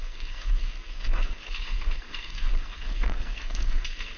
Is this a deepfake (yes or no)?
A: yes